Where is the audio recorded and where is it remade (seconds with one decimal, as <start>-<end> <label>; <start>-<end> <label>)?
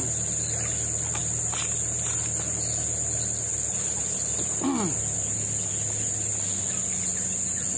0.0-7.8 recorded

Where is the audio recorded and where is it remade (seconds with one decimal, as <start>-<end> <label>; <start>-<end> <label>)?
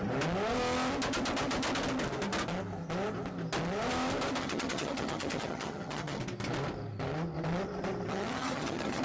0.0-4.4 recorded; 4.4-6.2 remade; 6.2-8.1 recorded; 8.1-9.0 remade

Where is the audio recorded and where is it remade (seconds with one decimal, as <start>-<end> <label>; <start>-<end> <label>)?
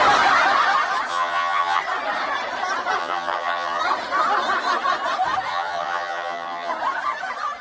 0.0-1.1 recorded; 1.1-1.8 remade; 1.8-3.0 recorded; 3.0-3.8 remade; 3.8-5.5 recorded; 5.5-6.7 remade; 6.7-7.6 recorded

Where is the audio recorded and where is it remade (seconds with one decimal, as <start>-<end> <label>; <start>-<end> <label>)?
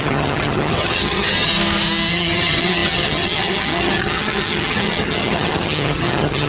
0.0-1.5 remade; 1.5-2.1 recorded; 2.1-6.5 remade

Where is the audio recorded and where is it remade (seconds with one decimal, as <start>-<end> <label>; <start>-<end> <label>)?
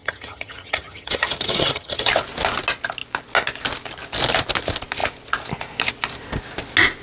0.0-2.1 remade; 2.1-7.0 recorded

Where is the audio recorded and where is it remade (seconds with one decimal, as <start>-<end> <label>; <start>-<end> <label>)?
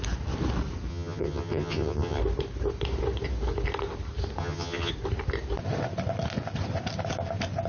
0.0-0.9 recorded; 0.9-2.2 remade; 2.2-4.4 recorded; 4.4-4.9 remade; 4.9-7.7 recorded